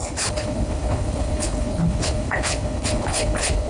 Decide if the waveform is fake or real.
fake